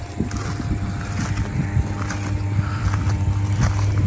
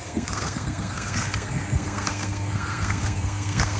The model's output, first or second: second